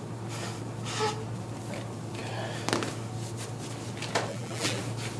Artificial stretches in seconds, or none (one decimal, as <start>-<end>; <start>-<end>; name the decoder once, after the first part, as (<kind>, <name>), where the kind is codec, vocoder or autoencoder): 4.3-4.8 (vocoder, BigVGAN v2)